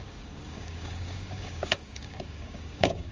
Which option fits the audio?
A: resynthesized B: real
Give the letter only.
A